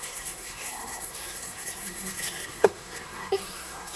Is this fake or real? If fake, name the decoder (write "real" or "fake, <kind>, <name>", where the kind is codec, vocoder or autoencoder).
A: fake, codec, SNAC